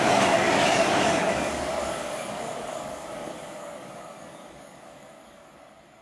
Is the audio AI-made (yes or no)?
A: yes